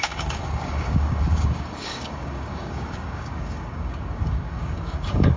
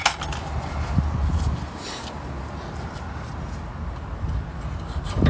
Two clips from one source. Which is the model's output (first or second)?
first